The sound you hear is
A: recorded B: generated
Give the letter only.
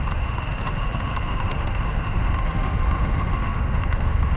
B